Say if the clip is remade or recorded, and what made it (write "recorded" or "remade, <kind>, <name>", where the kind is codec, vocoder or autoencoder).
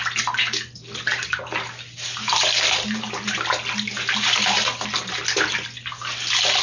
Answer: recorded